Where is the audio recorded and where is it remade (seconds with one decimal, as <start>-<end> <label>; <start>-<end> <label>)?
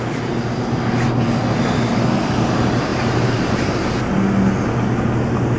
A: 0.0-5.6 recorded